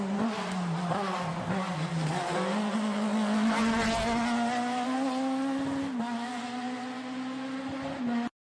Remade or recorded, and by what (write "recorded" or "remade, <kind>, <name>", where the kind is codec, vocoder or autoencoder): recorded